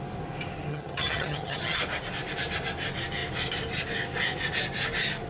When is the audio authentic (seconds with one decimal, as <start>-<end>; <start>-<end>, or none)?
0.0-0.7; 1.8-5.3